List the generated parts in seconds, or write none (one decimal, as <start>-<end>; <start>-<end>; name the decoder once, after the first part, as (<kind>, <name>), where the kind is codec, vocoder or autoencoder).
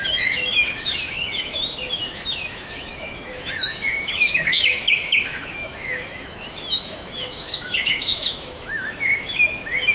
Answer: 0.0-9.9 (autoencoder, DAC-VAE)